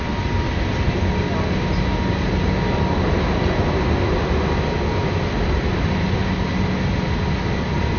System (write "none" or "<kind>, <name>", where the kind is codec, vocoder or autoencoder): none